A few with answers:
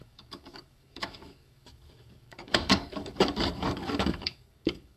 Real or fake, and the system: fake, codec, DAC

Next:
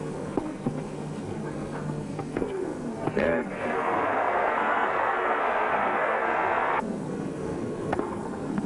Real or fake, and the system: fake, codec, SNAC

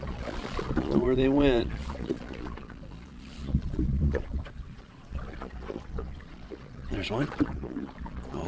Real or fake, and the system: fake, vocoder, Vocos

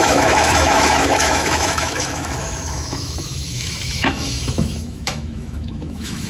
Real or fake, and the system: fake, autoencoder, DAC-VAE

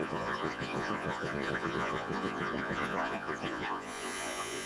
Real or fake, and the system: fake, vocoder, Vocos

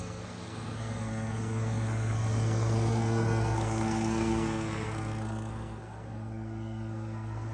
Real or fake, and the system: fake, codec, SNAC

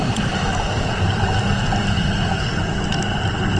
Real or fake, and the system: fake, vocoder, BigVGAN v2